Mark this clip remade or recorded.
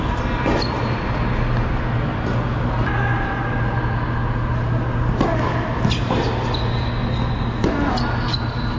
recorded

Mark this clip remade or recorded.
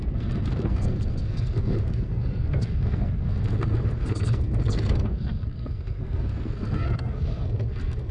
remade